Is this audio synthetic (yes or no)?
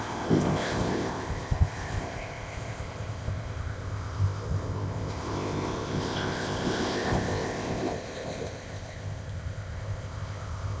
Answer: yes